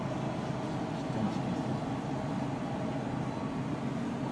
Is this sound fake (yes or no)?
no